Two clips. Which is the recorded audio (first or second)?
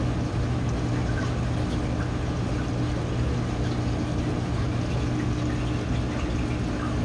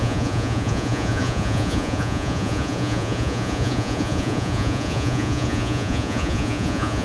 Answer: first